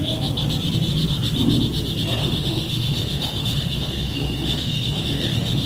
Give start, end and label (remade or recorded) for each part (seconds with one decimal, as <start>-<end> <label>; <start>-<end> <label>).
0.0-2.2 recorded; 2.2-5.7 remade